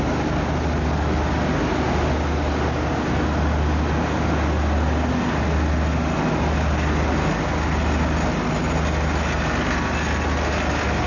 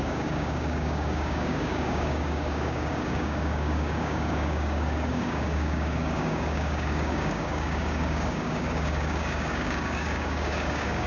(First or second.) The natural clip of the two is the first